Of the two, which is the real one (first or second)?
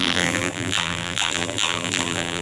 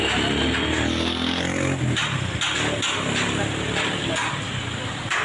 second